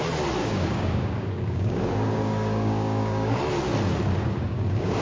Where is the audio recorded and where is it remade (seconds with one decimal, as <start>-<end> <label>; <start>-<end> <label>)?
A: 0.0-0.4 recorded; 0.4-3.4 remade; 3.4-4.2 recorded; 4.2-5.0 remade